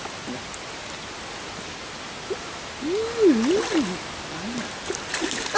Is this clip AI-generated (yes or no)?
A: no